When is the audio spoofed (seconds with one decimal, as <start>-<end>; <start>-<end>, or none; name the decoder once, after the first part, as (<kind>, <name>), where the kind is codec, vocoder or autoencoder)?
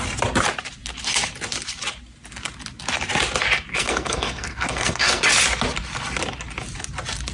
3.7-5.2 (codec, SNAC)